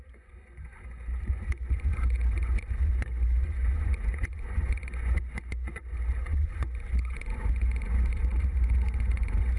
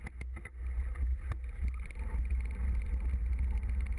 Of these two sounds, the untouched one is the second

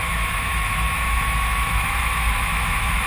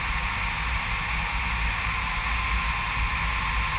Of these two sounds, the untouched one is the second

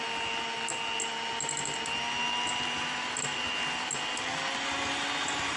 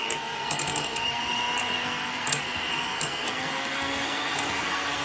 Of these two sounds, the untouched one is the first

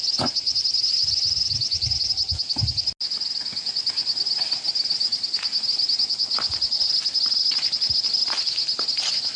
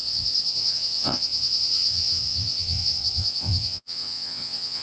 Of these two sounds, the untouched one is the first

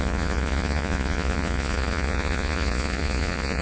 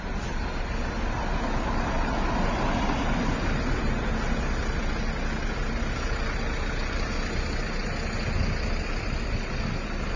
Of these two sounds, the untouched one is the second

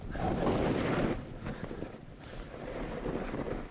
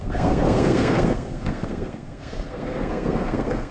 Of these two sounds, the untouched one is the first